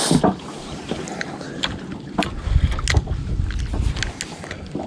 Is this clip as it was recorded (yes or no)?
yes